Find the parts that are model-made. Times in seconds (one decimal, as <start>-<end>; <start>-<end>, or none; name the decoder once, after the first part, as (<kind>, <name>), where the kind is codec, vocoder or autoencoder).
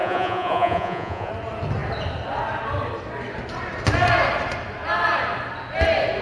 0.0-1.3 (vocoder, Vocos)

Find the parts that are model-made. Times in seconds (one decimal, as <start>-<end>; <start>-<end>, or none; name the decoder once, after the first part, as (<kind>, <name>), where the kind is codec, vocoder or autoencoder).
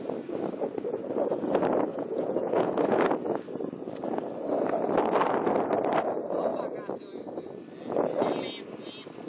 1.9-3.1 (vocoder, Vocos)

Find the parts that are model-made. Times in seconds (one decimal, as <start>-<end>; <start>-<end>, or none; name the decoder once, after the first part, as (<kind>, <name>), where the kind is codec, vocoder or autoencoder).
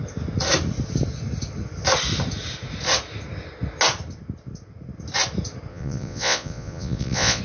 5.7-7.4 (vocoder, Vocos)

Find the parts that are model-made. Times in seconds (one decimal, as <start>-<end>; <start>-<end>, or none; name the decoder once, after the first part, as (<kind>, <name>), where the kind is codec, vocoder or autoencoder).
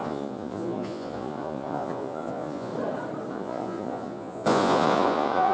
0.0-2.7 (vocoder, Vocos); 3.3-5.5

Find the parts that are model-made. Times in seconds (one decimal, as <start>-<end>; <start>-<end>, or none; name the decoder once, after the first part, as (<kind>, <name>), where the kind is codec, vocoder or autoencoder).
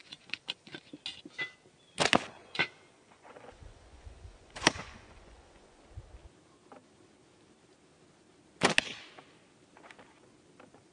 0.0-0.8 (vocoder, Vocos); 2.4-5.8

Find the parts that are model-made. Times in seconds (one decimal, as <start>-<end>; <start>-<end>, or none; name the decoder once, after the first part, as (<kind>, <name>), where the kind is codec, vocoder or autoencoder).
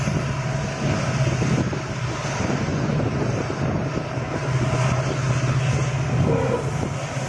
2.7-3.3 (vocoder, Vocos)